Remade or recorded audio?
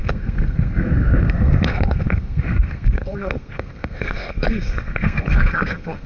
remade